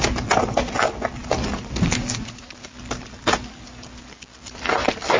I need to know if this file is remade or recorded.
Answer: recorded